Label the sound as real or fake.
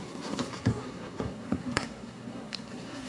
fake